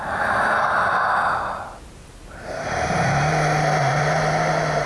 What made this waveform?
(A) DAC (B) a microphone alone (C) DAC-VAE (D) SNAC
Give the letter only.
B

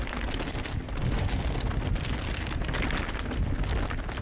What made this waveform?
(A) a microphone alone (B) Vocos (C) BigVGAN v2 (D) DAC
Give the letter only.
A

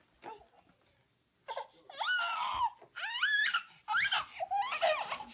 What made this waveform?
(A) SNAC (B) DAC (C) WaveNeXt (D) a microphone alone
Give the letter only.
D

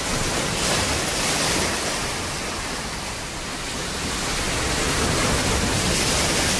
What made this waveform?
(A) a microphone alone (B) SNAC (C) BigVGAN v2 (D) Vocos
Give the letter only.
A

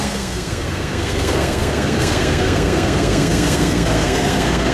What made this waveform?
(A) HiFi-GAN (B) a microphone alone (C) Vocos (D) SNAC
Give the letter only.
D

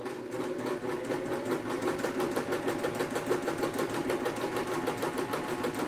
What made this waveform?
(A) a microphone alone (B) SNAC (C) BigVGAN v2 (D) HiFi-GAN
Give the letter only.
A